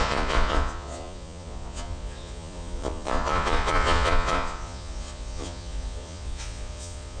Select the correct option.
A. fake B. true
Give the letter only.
A